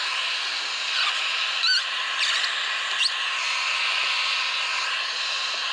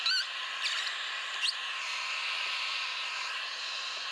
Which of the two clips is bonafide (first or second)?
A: second